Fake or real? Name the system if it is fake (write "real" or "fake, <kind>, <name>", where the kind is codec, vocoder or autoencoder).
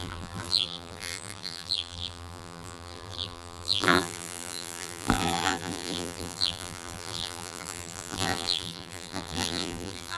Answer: fake, vocoder, BigVGAN v2